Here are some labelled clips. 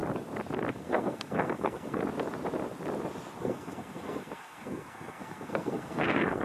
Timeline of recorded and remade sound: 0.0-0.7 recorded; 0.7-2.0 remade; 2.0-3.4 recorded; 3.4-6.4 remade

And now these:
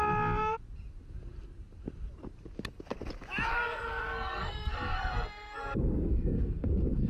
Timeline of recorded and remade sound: 0.0-3.5 recorded; 3.5-7.1 remade